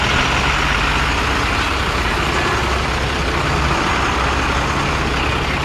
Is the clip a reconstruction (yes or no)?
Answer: no